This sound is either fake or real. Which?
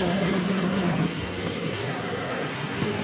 fake